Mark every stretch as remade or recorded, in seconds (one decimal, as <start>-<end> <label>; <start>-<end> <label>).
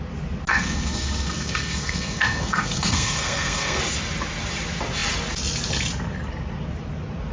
0.0-0.5 recorded; 0.5-3.8 remade; 3.8-7.3 recorded